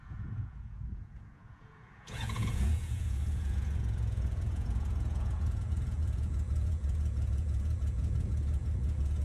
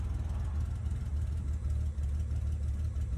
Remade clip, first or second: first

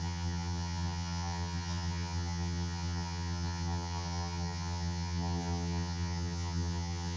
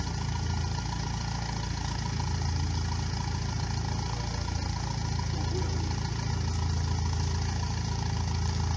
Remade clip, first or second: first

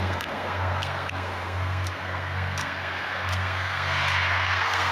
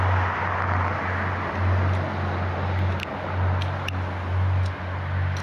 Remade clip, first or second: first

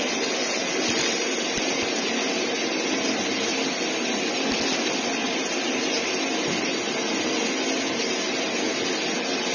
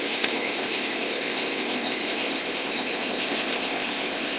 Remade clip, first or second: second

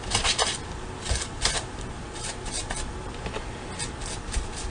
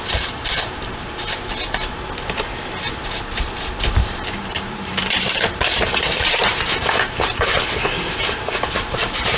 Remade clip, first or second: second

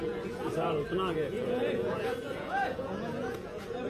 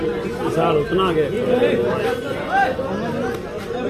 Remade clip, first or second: first